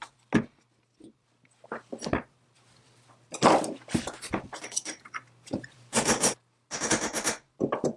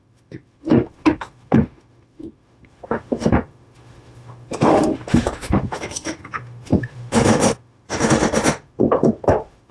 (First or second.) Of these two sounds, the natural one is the first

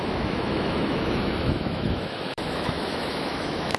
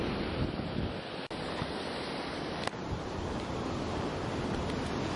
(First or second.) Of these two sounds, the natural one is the second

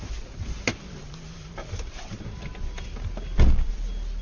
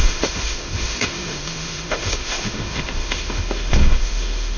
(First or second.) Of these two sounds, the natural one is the first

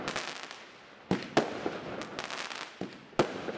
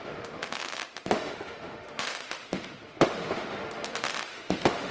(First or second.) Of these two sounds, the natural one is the first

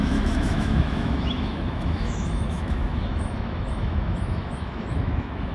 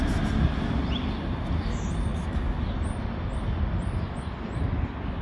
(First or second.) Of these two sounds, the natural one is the second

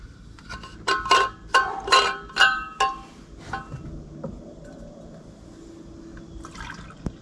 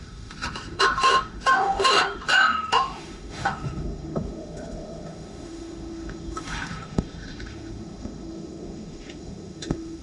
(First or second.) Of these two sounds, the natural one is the first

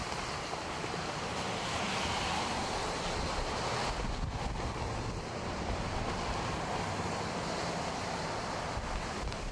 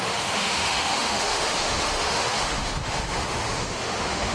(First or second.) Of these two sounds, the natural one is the first